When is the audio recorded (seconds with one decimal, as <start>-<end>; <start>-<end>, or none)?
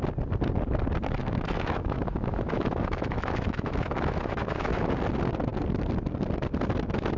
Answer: 0.0-1.2; 4.9-7.2